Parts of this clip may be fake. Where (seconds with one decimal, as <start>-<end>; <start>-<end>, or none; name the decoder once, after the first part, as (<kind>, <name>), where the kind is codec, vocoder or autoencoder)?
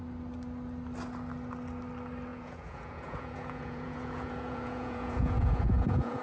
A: 2.3-6.2 (vocoder, Vocos)